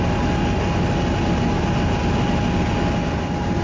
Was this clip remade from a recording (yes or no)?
no